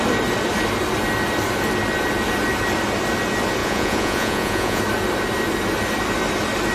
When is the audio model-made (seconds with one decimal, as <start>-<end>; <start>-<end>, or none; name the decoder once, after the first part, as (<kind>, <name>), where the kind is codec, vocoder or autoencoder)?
3.6-4.8 (vocoder, Vocos)